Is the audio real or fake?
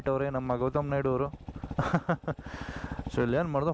real